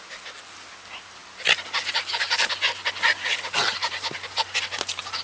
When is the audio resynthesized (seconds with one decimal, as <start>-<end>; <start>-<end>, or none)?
none